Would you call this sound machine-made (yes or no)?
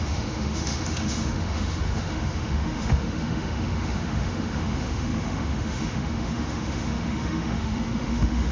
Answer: yes